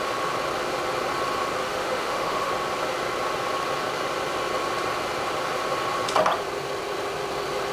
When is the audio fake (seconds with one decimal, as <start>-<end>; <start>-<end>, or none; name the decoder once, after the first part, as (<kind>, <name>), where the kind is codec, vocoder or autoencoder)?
1.6-2.5 (autoencoder, DAC-VAE)